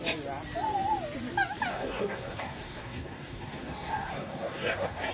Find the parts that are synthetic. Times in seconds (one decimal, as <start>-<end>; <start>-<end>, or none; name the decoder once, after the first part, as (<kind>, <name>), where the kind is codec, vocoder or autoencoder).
1.7-5.1 (codec, SNAC)